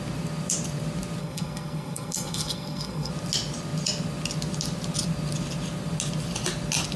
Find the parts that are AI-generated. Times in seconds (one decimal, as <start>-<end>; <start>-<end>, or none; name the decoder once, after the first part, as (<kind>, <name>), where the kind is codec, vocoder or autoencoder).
1.2-3.1 (codec, SNAC)